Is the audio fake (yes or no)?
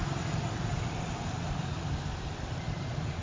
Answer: no